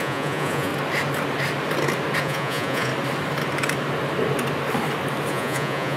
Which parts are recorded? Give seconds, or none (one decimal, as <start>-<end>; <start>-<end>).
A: 0.7-2.2; 2.9-5.3